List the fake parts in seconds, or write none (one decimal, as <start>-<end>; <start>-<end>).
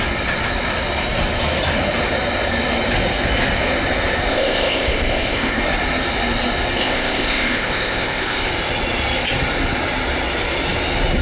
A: 4.3-5.6; 6.8-8.5